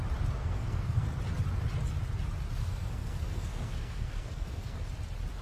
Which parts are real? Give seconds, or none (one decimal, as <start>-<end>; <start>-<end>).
0.0-0.4; 1.2-2.6; 4.9-5.4